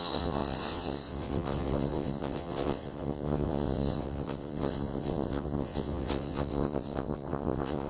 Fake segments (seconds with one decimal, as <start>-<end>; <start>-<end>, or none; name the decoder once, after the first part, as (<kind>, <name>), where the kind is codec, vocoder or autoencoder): 0.0-7.9 (vocoder, WaveNeXt)